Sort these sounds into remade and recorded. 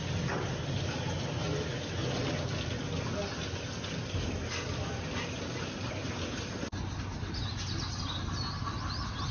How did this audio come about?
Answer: recorded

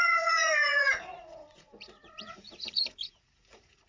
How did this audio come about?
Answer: remade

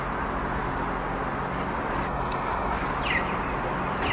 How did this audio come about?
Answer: recorded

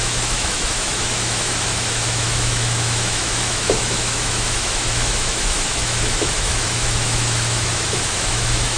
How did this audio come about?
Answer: remade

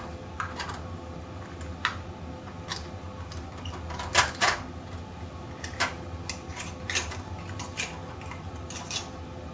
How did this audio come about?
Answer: recorded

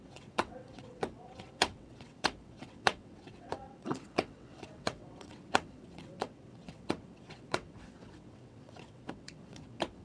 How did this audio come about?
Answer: remade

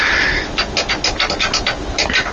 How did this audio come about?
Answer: recorded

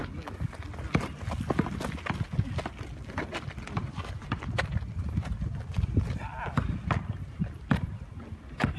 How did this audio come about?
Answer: recorded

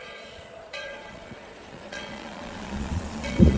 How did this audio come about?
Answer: remade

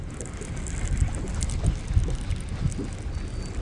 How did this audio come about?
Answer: recorded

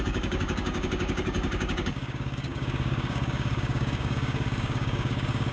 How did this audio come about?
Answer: remade